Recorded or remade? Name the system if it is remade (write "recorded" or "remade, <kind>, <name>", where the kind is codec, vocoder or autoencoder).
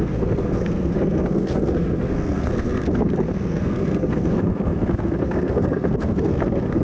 remade, codec, SNAC